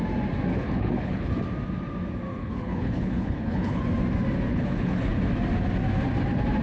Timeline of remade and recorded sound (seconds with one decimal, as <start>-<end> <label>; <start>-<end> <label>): 0.0-0.5 recorded; 0.5-1.3 remade; 1.3-2.3 recorded; 2.3-3.8 remade; 3.8-4.5 recorded; 4.5-5.1 remade; 5.1-6.6 recorded